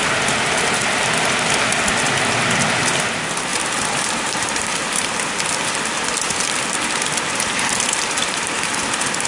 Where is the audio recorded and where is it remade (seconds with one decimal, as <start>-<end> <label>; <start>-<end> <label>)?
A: 0.0-3.5 recorded; 3.5-5.2 remade; 5.2-8.2 recorded; 8.2-8.9 remade; 8.9-9.3 recorded